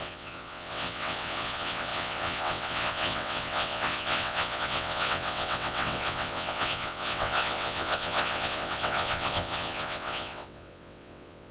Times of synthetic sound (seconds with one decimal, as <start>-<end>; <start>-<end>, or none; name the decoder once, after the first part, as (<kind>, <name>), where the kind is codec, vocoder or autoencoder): 0.0-11.5 (vocoder, WaveNeXt)